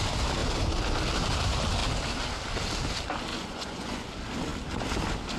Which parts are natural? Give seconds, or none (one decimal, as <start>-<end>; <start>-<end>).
0.0-3.3; 4.1-5.4